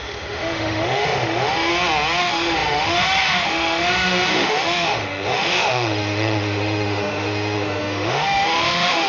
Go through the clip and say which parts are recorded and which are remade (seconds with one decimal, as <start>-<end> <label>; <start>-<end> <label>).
0.0-1.7 remade; 1.7-2.2 recorded; 2.2-9.1 remade